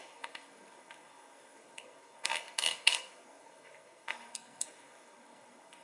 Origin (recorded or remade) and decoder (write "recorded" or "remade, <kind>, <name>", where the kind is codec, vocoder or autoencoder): remade, codec, SNAC